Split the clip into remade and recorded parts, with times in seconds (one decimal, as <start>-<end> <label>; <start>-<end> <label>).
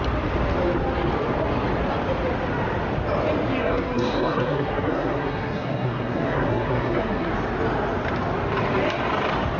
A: 0.0-3.6 recorded; 3.6-7.3 remade; 7.3-9.6 recorded